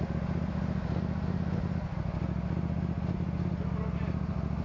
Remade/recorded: recorded